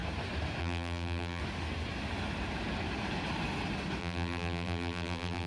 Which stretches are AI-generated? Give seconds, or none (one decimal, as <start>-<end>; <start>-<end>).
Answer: 0.6-1.4; 4.0-5.5